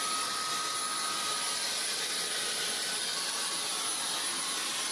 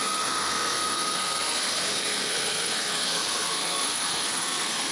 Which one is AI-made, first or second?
second